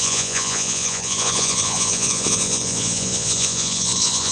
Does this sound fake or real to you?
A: fake